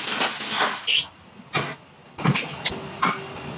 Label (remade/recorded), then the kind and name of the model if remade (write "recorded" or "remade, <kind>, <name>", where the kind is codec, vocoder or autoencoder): recorded